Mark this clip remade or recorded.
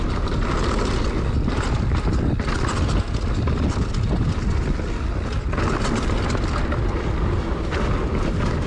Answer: recorded